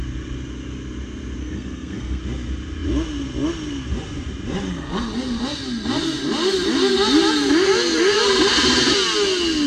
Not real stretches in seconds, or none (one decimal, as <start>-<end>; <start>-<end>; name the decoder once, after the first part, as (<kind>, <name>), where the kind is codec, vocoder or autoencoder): 1.4-2.2 (codec, SNAC)